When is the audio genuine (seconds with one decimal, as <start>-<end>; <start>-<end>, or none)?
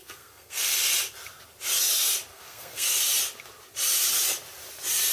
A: 0.8-2.3; 3.0-5.1